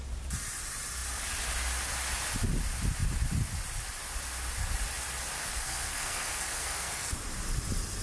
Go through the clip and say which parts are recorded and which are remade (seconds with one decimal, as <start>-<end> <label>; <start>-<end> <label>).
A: 0.0-5.4 recorded; 5.4-7.1 remade; 7.1-8.0 recorded